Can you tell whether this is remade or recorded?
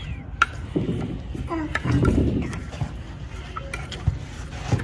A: recorded